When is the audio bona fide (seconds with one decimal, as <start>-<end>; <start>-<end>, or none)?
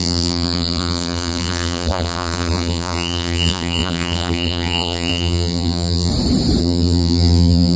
6.1-6.6